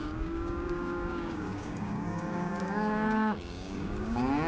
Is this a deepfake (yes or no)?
yes